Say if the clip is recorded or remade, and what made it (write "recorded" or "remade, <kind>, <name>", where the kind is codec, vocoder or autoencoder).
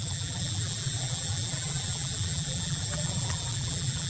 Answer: remade, vocoder, BigVGAN v2